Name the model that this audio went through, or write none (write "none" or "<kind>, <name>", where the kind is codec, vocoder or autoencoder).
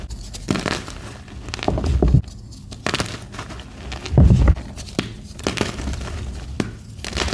none